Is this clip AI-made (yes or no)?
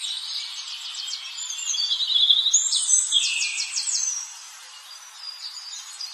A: yes